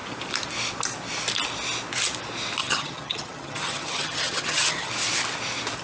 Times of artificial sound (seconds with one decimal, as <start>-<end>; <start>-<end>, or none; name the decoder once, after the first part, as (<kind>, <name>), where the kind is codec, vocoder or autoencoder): 2.6-4.9 (vocoder, HiFi-GAN)